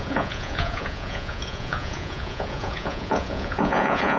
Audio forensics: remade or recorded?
remade